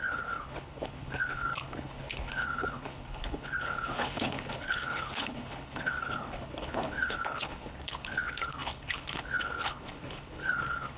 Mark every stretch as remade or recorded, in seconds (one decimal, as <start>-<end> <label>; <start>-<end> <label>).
0.0-11.0 remade